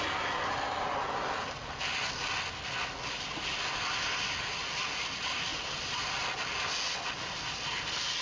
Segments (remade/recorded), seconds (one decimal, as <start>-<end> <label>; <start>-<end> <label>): 0.0-8.2 recorded